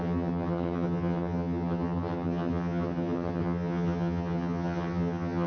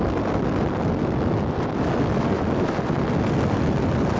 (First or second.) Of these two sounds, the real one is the second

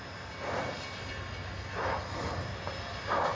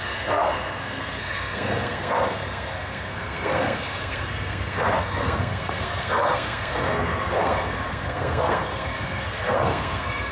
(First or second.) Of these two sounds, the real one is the first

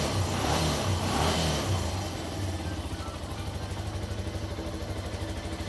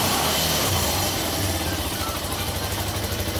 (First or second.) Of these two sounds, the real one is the first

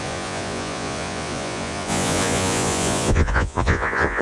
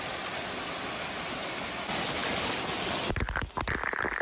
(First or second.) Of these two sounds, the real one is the second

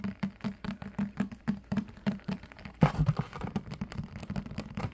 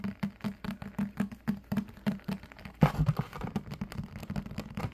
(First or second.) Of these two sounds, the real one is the second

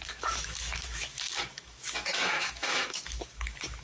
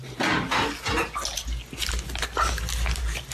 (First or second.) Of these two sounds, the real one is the second